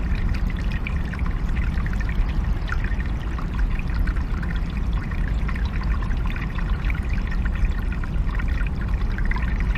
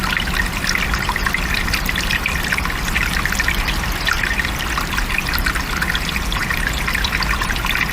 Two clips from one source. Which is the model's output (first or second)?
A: first